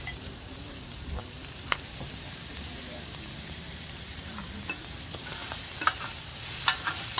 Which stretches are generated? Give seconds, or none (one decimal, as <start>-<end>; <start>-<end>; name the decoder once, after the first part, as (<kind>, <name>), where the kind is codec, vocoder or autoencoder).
0.0-7.2 (vocoder, BigVGAN v2)